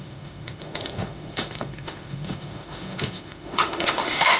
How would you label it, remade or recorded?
remade